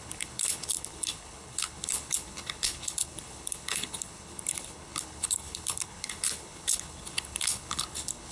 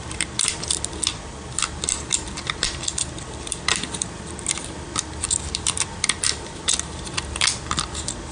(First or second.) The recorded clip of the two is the second